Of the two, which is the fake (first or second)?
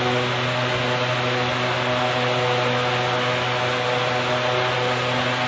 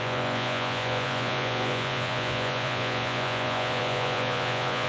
second